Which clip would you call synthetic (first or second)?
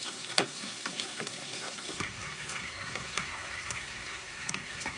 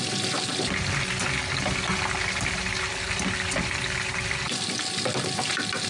first